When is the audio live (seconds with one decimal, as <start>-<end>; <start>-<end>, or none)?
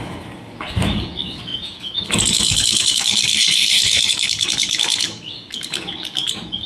none